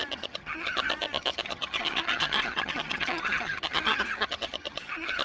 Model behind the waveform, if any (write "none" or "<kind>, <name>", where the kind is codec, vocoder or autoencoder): vocoder, HiFi-GAN